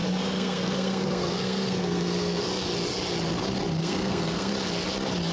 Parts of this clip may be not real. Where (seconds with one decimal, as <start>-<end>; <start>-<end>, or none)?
0.0-2.4; 3.8-4.5